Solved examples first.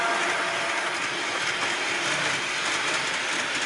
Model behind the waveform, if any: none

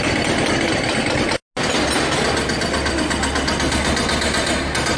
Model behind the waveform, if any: none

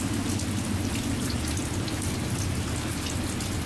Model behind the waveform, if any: none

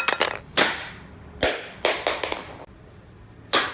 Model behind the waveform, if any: none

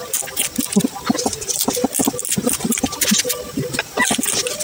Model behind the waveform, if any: none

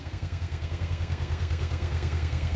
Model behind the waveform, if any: codec, SNAC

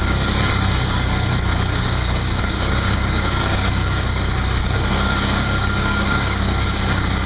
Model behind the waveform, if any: codec, DAC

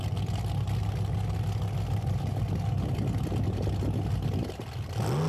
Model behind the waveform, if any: none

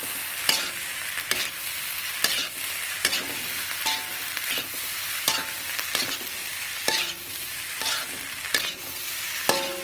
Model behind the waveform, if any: none